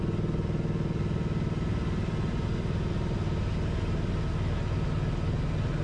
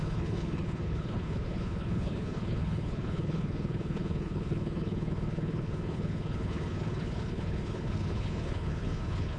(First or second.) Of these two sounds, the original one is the first